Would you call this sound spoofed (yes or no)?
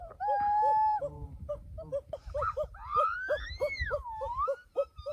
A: yes